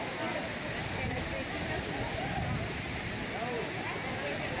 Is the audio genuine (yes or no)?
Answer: yes